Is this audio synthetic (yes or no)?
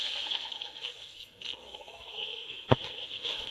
yes